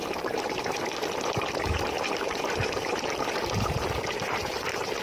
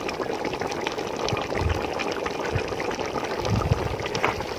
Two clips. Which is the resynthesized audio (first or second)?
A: first